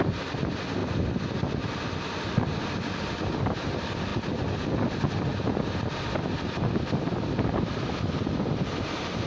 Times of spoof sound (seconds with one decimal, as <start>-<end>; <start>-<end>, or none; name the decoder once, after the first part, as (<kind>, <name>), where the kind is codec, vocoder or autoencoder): none